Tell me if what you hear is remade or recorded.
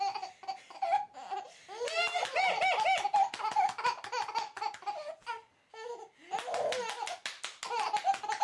recorded